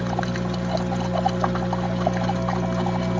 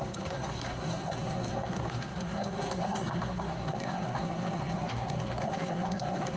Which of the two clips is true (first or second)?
first